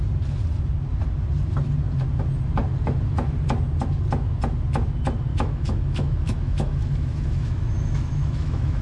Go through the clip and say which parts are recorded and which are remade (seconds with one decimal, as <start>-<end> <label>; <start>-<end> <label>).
0.0-5.3 recorded; 5.3-8.8 remade